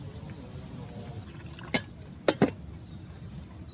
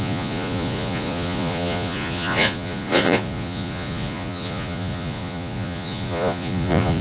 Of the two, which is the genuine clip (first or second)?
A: first